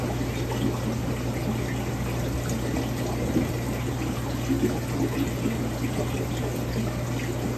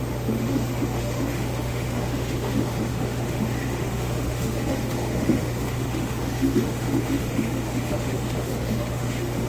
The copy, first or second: second